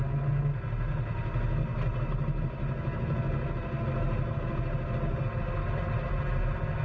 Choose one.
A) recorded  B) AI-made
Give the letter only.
A